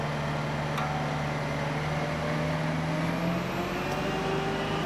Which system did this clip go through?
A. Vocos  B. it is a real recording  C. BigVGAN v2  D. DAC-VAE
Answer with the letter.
B